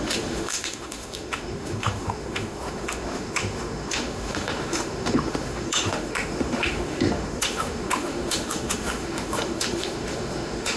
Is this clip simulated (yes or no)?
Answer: yes